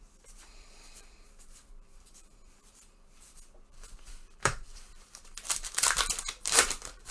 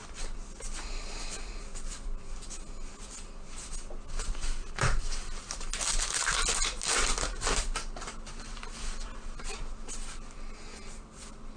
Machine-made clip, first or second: first